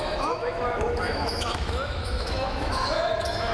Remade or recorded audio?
remade